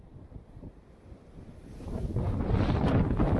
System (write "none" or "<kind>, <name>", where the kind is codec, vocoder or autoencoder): none